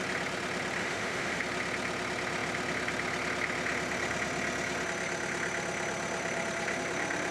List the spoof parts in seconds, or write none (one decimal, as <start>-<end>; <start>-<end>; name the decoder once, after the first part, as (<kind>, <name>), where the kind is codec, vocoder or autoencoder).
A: 0.8-1.4 (autoencoder, DAC-VAE)